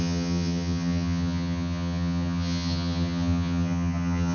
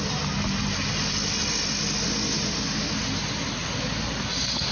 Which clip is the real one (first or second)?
second